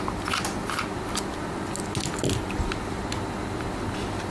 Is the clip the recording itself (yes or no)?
yes